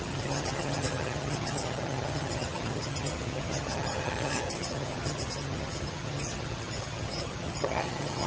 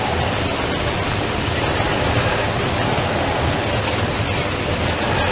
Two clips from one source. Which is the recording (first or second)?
second